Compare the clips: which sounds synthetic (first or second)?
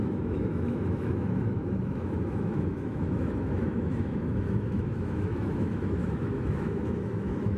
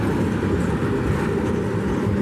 first